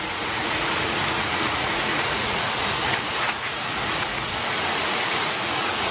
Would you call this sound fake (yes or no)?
yes